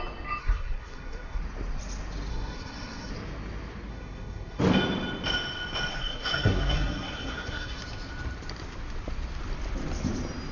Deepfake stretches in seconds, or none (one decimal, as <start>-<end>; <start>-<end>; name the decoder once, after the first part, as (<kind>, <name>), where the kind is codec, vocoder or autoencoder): 0.4-1.4 (codec, SNAC); 2.3-3.1; 3.9-4.6; 5.9-7.8

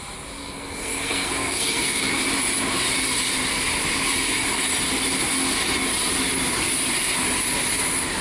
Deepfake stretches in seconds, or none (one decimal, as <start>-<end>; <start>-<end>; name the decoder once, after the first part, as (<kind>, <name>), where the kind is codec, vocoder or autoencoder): 0.4-2.2 (codec, SNAC)